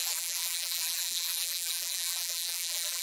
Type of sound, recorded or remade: remade